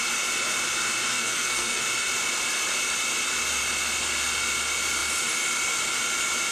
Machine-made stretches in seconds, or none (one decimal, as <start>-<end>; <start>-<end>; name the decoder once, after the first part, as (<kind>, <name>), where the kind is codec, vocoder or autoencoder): 1.1-1.8 (codec, SNAC)